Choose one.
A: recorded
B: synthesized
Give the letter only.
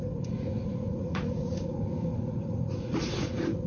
B